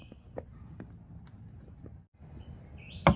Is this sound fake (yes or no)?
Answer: no